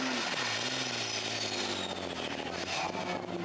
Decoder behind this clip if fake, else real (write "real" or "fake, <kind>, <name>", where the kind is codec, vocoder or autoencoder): real